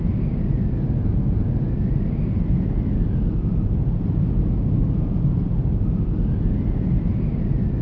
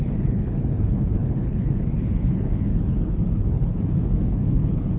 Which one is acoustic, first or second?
first